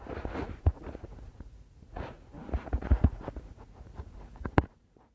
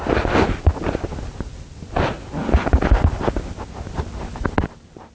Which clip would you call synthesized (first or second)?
first